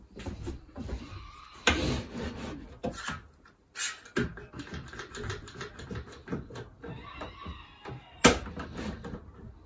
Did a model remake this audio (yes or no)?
no